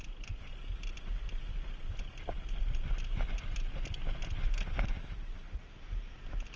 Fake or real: real